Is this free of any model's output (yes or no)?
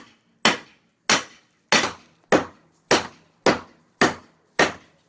yes